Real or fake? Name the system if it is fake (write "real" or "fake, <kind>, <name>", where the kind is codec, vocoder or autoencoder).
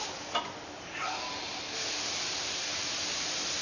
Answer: real